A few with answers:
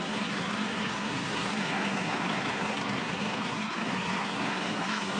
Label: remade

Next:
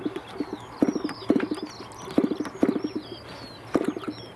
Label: recorded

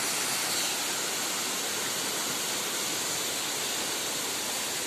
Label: recorded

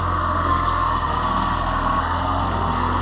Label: remade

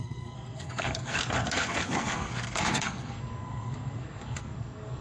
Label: remade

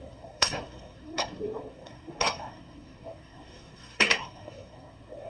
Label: remade